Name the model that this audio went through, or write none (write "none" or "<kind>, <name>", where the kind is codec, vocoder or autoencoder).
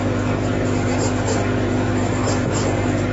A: none